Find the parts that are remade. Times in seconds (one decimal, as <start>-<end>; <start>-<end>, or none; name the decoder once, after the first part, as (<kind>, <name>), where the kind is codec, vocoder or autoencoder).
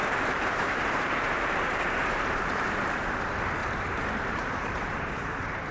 0.0-2.9 (vocoder, BigVGAN v2); 3.6-5.2